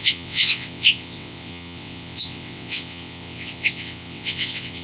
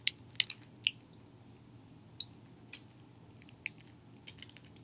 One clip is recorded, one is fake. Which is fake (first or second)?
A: first